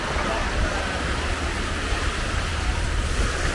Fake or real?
real